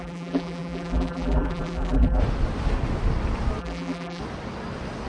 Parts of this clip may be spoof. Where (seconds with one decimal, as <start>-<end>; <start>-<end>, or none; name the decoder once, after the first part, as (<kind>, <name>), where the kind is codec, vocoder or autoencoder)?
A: 0.0-2.2 (vocoder, BigVGAN v2); 3.6-4.2